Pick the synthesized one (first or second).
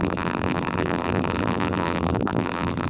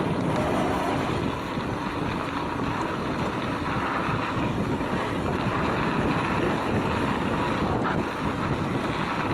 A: first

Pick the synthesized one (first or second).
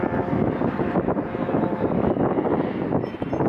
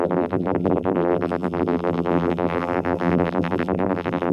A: second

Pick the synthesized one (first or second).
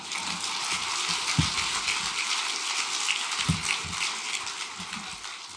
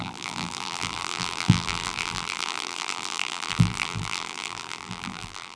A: second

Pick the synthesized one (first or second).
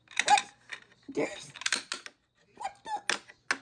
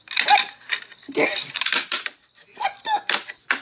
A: second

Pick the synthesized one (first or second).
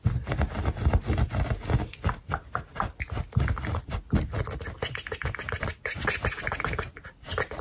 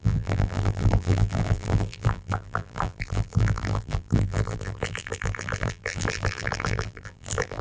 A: second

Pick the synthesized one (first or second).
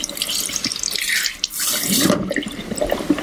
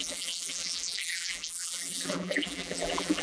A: second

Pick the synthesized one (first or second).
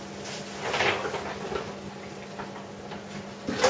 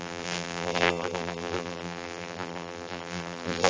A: second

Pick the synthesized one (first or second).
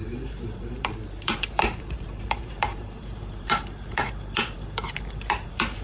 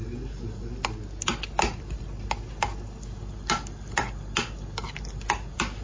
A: first